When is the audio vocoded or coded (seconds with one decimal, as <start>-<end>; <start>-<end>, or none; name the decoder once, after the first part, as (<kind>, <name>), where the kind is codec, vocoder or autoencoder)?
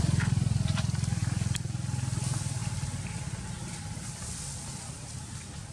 none